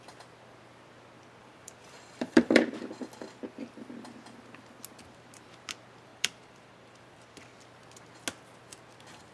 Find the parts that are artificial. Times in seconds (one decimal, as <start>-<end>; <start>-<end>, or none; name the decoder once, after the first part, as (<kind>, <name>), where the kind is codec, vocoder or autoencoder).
1.4-2.7 (vocoder, BigVGAN v2); 6.1-7.4